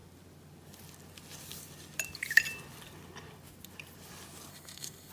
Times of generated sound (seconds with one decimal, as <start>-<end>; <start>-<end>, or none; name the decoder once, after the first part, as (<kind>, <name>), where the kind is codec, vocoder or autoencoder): 4.5-5.1 (codec, SNAC)